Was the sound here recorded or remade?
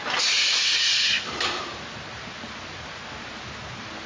recorded